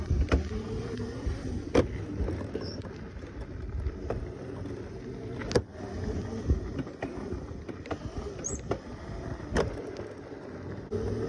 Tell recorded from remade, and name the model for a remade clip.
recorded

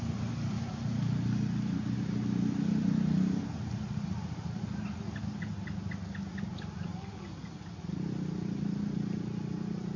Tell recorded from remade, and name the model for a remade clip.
recorded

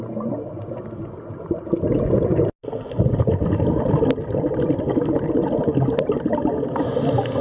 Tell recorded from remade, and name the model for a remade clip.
recorded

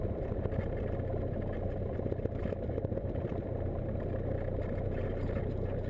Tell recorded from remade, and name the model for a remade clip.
remade, vocoder, BigVGAN v2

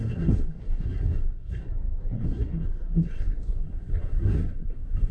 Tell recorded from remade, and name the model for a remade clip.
remade, codec, SNAC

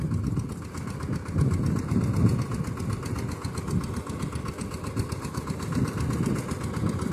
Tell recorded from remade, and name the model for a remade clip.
remade, vocoder, BigVGAN v2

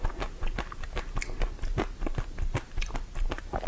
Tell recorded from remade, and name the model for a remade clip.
recorded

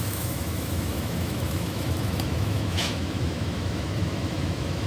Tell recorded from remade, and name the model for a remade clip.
remade, autoencoder, DAC-VAE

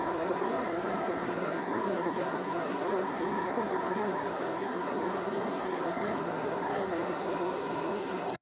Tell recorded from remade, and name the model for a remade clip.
remade, codec, SNAC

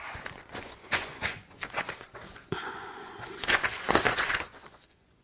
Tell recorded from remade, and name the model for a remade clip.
remade, vocoder, Vocos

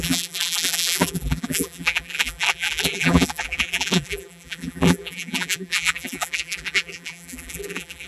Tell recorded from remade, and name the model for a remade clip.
remade, vocoder, BigVGAN v2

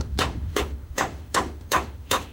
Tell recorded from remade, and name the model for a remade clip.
remade, autoencoder, DAC-VAE